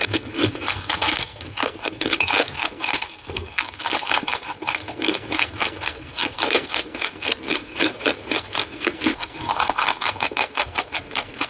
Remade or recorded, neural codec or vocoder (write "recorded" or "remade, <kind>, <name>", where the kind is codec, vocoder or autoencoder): remade, codec, SNAC